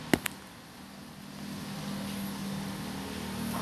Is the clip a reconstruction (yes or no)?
no